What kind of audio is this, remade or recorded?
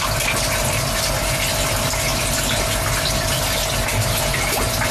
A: recorded